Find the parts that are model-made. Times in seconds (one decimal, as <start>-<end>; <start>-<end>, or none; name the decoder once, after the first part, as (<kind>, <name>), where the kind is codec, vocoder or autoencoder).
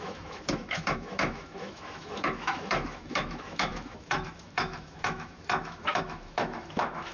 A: 0.0-7.1 (autoencoder, DAC-VAE)